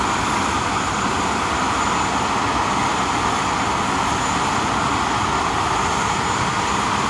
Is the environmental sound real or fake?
real